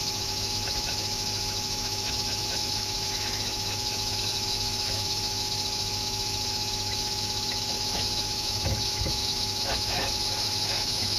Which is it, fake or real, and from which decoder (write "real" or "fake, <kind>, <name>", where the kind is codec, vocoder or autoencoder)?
fake, autoencoder, DAC-VAE